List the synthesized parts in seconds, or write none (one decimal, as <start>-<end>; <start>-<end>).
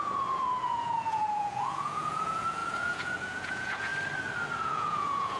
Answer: 0.0-3.9; 4.6-5.4